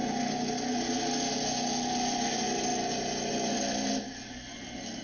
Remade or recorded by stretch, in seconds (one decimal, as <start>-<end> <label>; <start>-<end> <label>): 0.0-5.0 recorded